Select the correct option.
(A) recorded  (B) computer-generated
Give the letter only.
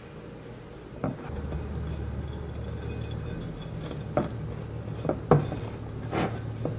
A